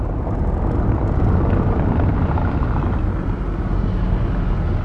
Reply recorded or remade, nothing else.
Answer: recorded